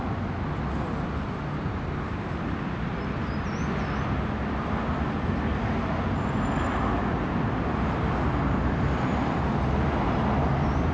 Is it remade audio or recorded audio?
recorded